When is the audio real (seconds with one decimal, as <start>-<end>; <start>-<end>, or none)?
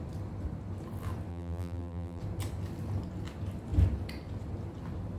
0.0-1.3; 2.2-5.2